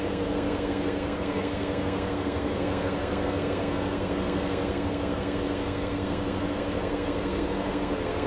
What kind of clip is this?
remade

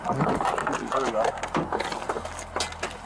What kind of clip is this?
recorded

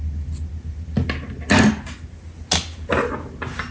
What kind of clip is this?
recorded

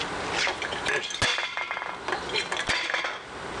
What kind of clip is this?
recorded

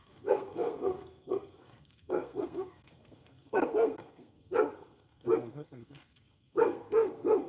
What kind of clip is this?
remade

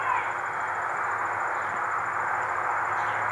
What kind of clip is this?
recorded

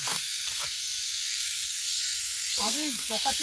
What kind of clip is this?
remade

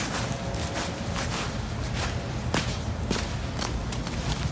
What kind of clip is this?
recorded